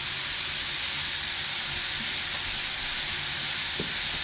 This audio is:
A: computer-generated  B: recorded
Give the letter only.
B